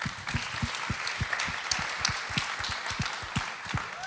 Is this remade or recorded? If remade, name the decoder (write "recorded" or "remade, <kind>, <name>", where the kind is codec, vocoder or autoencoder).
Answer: recorded